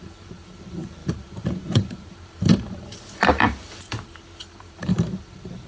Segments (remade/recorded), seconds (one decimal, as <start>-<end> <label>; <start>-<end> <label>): 0.0-5.7 remade